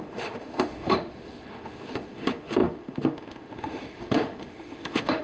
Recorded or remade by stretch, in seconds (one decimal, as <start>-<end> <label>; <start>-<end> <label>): 0.0-5.2 remade

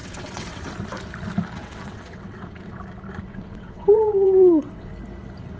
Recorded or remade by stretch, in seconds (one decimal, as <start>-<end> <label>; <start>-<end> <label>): 0.0-0.7 remade; 0.7-1.6 recorded; 1.6-2.8 remade; 2.8-3.3 recorded; 3.3-4.9 remade; 4.9-5.6 recorded

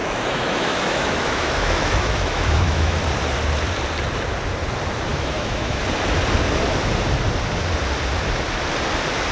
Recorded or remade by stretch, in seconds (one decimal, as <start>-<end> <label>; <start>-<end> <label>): 0.0-3.0 remade; 3.0-5.1 recorded; 5.1-5.8 remade; 5.8-9.3 recorded

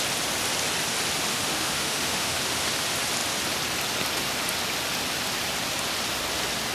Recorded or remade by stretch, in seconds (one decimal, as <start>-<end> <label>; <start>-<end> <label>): 0.0-1.3 recorded; 1.3-2.4 remade; 2.4-6.7 recorded

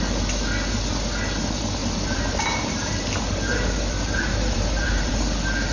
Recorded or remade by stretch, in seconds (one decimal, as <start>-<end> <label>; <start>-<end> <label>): 0.0-1.8 recorded; 1.8-5.1 remade; 5.1-5.7 recorded

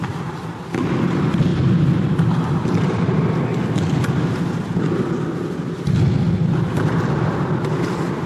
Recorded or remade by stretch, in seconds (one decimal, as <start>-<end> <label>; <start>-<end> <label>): 0.0-1.5 recorded; 1.5-3.4 remade; 3.4-8.3 recorded

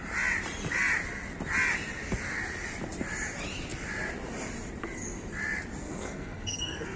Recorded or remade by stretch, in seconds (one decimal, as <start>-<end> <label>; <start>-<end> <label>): 0.0-5.8 recorded; 5.8-7.0 remade

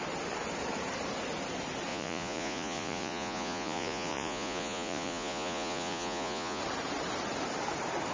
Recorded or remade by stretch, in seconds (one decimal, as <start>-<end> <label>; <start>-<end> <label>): 0.0-1.9 recorded; 1.9-6.6 remade; 6.6-8.1 recorded